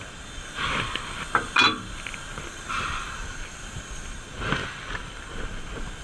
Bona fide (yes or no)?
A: yes